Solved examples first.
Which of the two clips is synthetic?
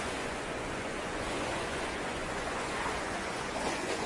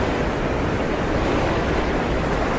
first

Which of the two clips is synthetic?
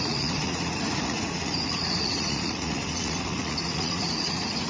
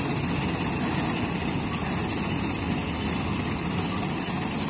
first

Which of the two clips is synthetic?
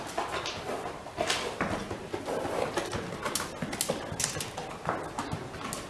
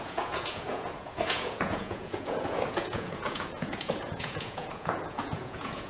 second